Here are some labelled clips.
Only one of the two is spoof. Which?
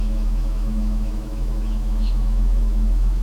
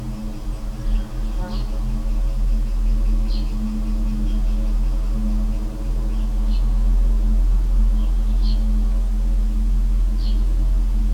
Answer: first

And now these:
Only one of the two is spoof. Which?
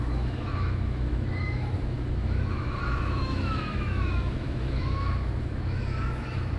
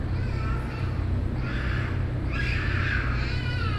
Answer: first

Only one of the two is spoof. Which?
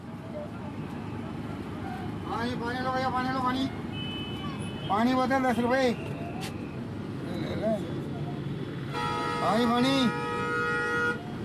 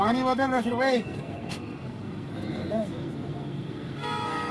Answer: second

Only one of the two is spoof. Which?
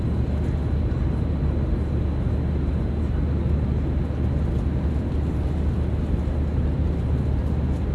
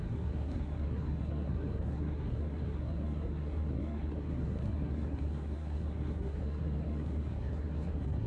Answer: second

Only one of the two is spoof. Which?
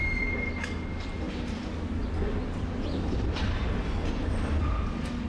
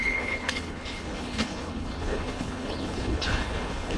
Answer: second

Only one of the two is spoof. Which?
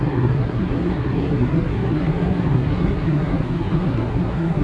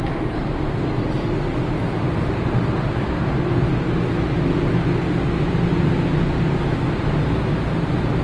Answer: first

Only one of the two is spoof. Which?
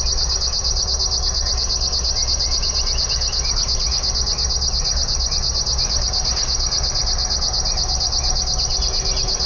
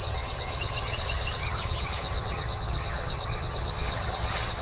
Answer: second